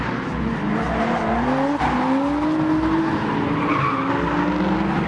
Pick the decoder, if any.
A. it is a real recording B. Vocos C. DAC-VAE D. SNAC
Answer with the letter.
A